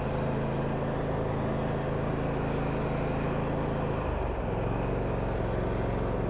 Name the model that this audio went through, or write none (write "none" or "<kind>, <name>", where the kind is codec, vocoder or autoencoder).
none